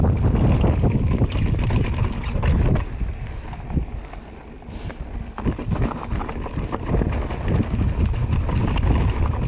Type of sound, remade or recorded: recorded